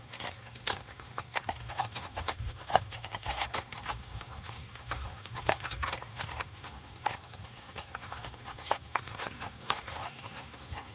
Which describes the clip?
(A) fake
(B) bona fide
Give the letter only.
A